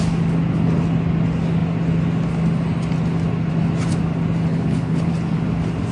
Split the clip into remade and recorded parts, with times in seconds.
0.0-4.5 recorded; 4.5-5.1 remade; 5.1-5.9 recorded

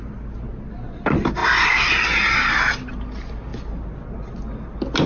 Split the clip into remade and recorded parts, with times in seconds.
0.0-5.1 recorded

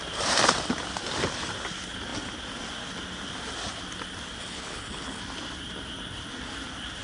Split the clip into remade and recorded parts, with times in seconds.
0.0-4.4 recorded; 4.4-5.2 remade; 5.2-7.0 recorded

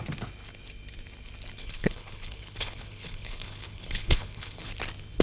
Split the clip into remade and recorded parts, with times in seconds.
0.0-1.6 recorded; 1.6-4.7 remade; 4.7-5.2 recorded

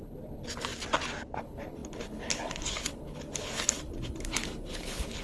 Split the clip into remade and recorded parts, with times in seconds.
0.0-0.7 remade; 0.7-1.4 recorded; 1.4-5.2 remade

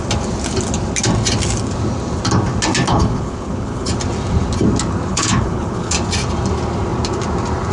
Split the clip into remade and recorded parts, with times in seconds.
0.0-2.9 recorded; 2.9-3.9 remade; 3.9-5.1 recorded; 5.1-5.9 remade; 5.9-7.7 recorded